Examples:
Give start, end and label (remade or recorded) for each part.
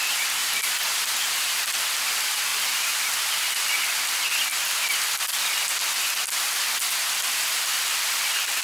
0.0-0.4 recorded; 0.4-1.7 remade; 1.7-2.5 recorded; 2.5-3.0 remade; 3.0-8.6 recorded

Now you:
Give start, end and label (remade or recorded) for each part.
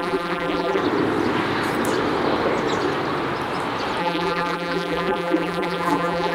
0.0-0.8 remade; 0.8-4.0 recorded; 4.0-6.3 remade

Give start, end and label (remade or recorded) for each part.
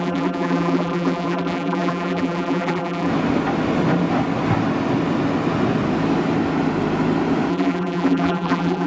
0.0-3.1 remade; 3.1-7.5 recorded; 7.5-8.9 remade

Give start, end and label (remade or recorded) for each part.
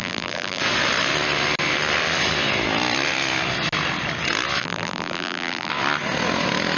0.0-0.6 remade; 0.6-4.6 recorded; 4.6-5.7 remade; 5.7-6.8 recorded